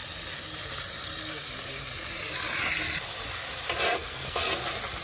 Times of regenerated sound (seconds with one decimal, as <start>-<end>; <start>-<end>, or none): 3.9-4.4